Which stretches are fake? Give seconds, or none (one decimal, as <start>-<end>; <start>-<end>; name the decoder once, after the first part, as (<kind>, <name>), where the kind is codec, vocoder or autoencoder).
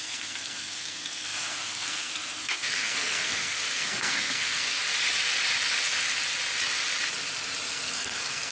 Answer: 0.0-4.8 (codec, SNAC); 7.7-8.5